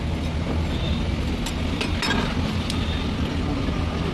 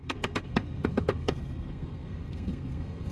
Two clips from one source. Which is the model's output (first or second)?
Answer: second